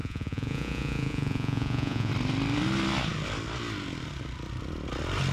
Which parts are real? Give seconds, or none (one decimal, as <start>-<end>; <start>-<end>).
2.1-5.3